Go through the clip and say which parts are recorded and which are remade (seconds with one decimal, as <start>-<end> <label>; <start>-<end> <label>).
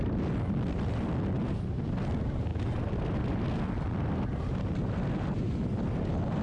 0.0-6.4 recorded